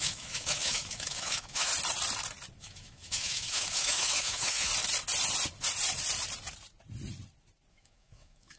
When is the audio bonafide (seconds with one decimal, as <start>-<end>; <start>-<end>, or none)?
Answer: 1.7-2.6; 4.7-7.7